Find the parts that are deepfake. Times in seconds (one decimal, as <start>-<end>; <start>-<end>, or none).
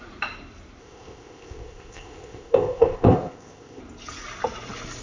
0.8-3.8